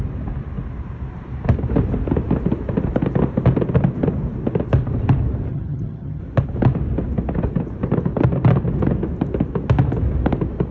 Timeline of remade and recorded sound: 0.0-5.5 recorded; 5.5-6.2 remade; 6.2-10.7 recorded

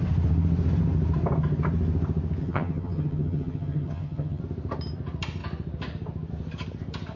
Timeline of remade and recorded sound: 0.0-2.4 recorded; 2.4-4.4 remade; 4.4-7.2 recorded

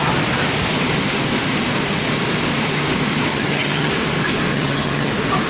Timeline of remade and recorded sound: 0.0-3.3 recorded; 3.3-3.9 remade; 3.9-4.5 recorded; 4.5-5.1 remade; 5.1-5.5 recorded

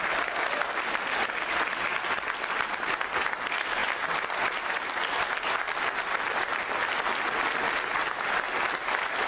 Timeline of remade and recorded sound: 0.0-9.3 recorded

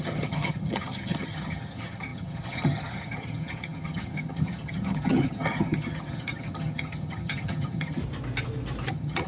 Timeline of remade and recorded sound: 0.0-8.0 remade; 8.0-8.9 recorded; 8.9-9.3 remade